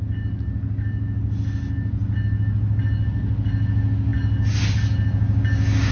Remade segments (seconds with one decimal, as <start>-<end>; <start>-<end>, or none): none